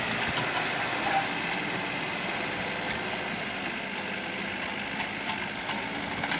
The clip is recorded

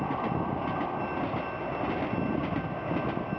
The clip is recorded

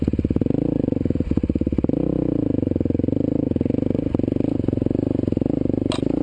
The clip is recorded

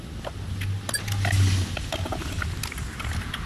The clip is recorded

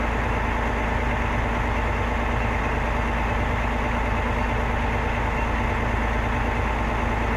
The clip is recorded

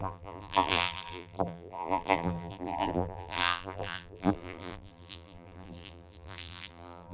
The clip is remade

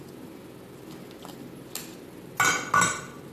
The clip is recorded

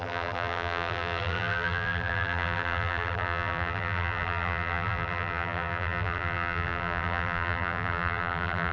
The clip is remade